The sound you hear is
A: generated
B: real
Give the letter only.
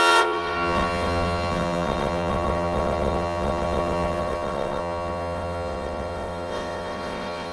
A